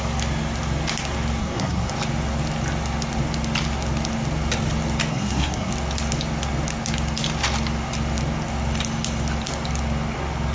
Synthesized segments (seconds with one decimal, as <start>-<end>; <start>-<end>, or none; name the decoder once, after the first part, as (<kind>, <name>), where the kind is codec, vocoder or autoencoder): 1.4-1.9 (codec, SNAC); 5.1-5.7